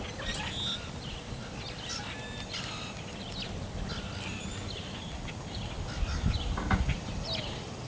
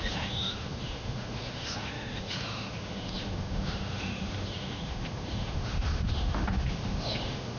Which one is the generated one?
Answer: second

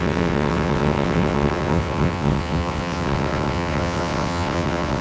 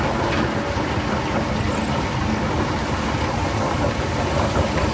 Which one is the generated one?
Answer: first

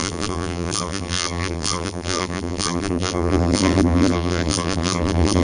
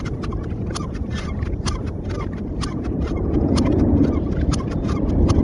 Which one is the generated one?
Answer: first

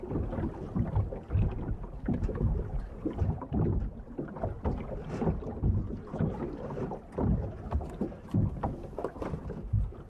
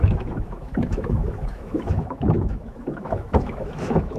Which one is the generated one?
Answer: second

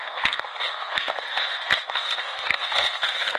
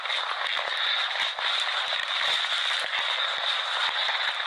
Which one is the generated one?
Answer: first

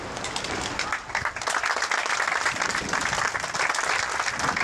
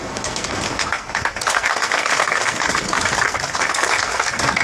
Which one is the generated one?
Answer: second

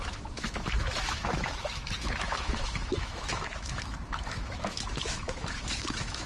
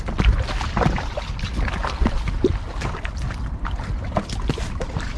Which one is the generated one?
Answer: first